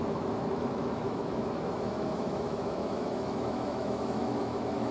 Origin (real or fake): fake